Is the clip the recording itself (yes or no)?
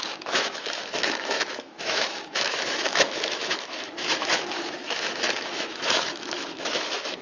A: no